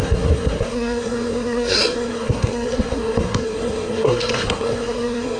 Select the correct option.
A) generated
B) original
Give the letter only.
A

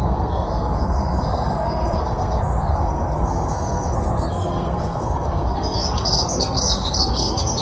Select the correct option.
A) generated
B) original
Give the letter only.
A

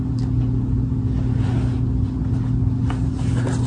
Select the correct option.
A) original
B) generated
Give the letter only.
A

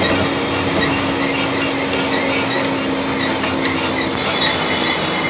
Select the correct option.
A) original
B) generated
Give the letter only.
A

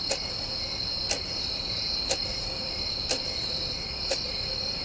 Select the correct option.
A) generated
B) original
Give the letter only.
B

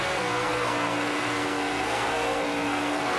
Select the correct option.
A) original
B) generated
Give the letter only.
B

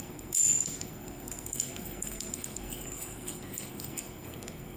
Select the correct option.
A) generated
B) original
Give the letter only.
A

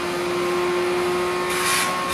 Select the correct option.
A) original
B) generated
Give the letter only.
A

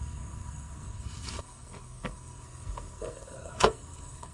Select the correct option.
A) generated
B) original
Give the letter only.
A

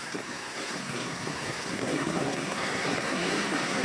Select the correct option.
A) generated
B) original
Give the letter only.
A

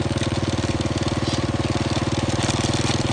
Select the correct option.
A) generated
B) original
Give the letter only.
B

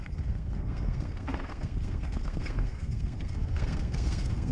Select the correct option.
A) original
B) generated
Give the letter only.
B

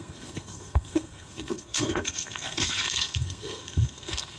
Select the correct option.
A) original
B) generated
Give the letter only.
B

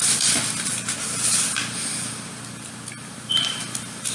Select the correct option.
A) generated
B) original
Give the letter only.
B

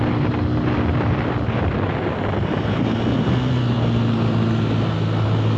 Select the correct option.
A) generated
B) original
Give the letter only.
B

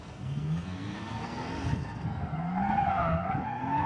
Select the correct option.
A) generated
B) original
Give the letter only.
A